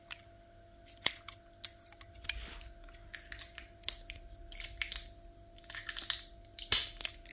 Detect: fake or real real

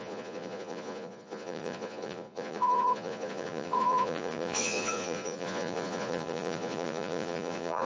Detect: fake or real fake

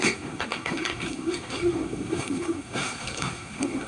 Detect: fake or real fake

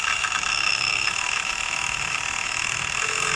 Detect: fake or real fake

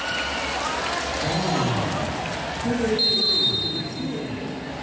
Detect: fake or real real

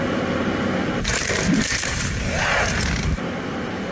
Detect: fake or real fake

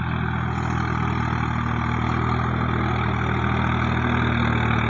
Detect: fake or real real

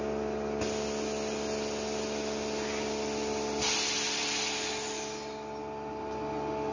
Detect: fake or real real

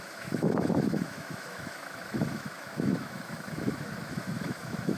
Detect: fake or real fake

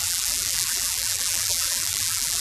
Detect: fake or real fake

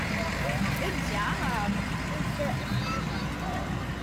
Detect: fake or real real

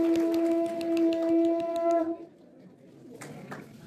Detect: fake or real real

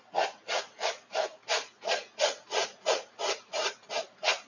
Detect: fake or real fake